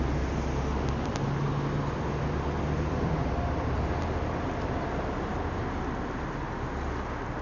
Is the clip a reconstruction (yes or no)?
no